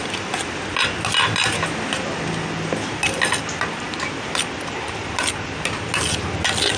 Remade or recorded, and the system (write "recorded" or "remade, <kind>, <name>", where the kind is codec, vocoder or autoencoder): recorded